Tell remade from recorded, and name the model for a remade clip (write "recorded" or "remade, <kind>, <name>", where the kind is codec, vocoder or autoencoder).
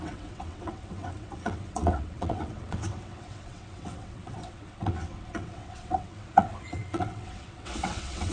remade, vocoder, WaveNeXt